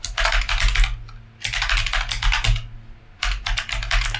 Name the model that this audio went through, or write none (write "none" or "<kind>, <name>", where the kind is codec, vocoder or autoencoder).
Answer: none